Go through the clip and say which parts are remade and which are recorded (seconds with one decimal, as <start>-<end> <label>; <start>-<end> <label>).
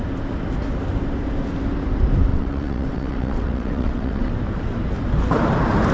0.0-2.3 recorded; 2.3-4.3 remade; 4.3-5.9 recorded